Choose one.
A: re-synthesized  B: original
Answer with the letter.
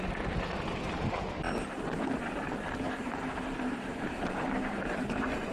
A